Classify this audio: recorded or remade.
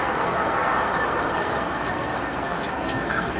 remade